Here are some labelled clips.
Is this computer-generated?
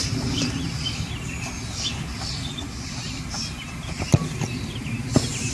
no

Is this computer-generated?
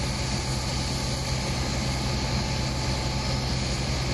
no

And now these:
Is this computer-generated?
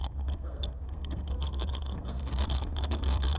yes